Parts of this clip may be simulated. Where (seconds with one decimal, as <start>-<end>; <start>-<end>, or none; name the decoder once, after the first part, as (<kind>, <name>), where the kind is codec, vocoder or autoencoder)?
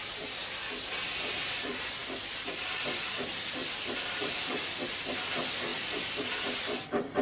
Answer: 3.6-4.6 (vocoder, BigVGAN v2); 5.7-7.2